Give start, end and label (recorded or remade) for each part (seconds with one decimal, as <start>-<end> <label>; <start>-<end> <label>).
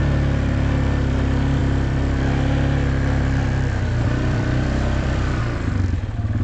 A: 0.0-1.6 recorded; 1.6-5.4 remade; 5.4-6.4 recorded